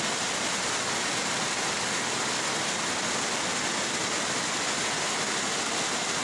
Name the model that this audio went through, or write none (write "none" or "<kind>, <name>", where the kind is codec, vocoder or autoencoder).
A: none